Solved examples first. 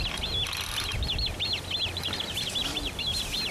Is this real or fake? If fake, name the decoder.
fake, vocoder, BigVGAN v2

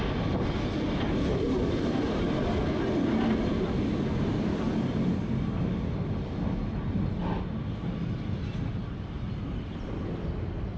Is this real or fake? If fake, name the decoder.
real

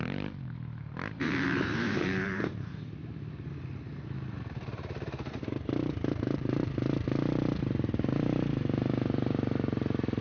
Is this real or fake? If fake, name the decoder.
fake, vocoder, BigVGAN v2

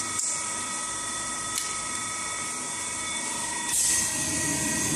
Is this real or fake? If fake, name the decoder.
fake, vocoder, BigVGAN v2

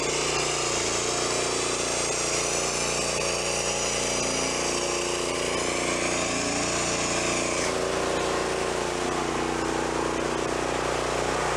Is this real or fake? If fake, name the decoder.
real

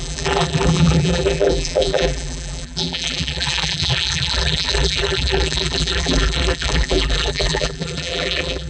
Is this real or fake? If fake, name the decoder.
fake, vocoder, BigVGAN v2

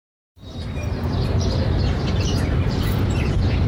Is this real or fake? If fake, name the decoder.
fake, vocoder, BigVGAN v2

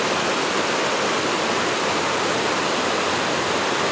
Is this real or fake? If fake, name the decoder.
real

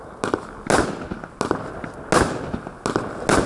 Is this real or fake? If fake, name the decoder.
real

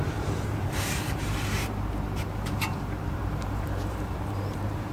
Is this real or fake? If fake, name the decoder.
fake, vocoder, BigVGAN v2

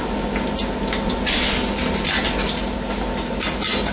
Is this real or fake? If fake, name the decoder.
real